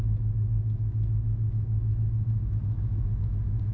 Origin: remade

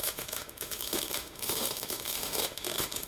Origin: remade